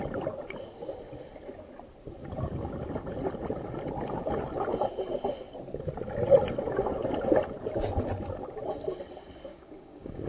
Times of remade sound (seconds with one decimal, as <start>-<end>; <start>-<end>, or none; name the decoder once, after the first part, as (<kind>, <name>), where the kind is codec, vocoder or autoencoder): 9.5-10.3 (codec, DAC)